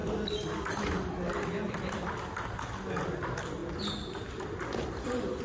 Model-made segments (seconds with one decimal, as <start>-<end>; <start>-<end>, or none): none